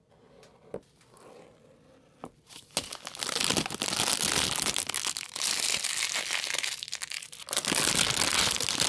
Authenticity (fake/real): real